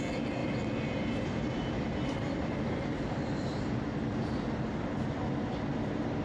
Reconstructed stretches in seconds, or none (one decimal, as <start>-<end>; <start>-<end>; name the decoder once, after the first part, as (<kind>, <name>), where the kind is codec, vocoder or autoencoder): 0.4-3.6 (vocoder, BigVGAN v2)